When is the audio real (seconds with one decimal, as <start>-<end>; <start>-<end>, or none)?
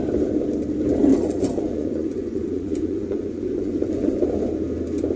0.0-1.1; 4.2-5.2